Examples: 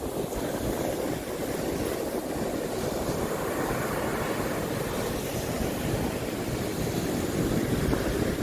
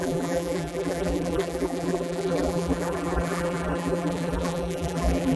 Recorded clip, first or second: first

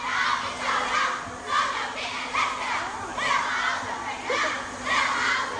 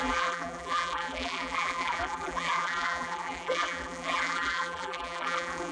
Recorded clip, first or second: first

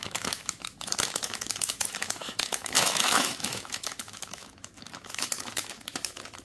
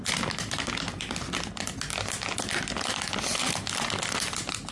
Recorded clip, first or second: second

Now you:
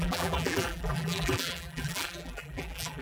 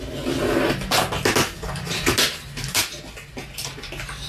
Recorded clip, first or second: second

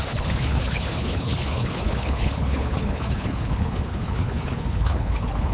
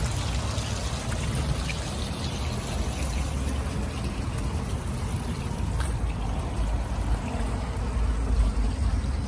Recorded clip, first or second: second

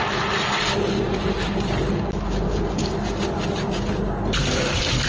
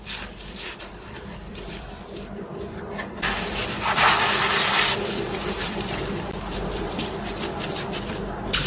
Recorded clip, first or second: first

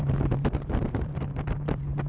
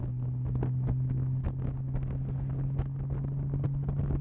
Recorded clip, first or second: second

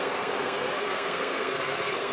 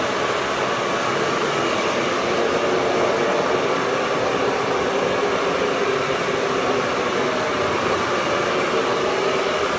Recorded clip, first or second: second